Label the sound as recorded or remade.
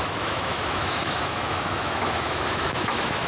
remade